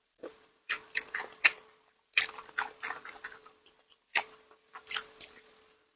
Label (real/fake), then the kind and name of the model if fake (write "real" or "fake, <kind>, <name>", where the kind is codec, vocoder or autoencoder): real